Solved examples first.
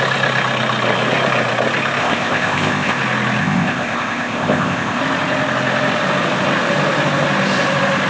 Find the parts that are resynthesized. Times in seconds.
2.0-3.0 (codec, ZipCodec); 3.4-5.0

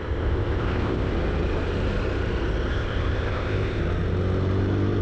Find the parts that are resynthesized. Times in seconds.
0.0-1.1 (codec, ZipCodec); 2.7-3.8

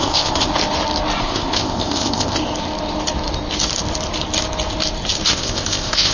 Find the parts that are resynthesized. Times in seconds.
0.0-0.5 (codec, ZipCodec); 1.2-2.4; 5.3-6.1

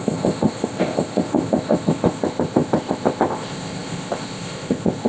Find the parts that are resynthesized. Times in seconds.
0.0-5.1 (codec, ZipCodec)

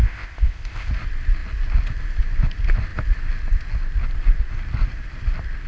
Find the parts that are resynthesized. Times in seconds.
0.0-0.9 (codec, ZipCodec)